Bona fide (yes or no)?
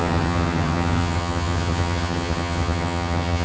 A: no